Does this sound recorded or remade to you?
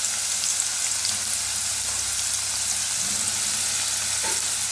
recorded